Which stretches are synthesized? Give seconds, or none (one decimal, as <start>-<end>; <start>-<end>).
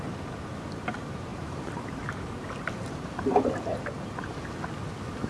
1.3-3.3; 3.7-4.3